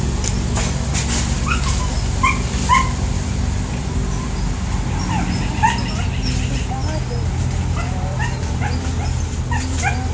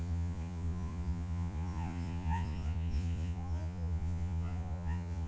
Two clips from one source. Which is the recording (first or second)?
first